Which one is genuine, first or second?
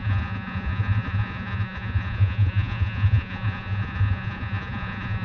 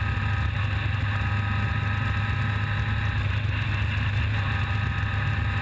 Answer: second